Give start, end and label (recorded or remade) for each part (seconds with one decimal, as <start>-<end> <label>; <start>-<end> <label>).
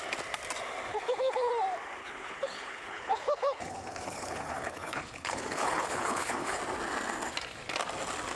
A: 0.0-0.9 recorded; 0.9-1.5 remade; 1.5-2.0 recorded; 2.0-6.6 remade; 6.6-8.4 recorded